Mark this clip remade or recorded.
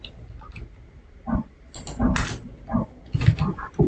recorded